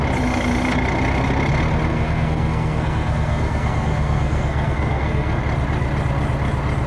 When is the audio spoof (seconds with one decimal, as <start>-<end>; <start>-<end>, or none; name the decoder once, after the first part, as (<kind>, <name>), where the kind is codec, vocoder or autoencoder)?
1.9-5.4 (codec, SNAC)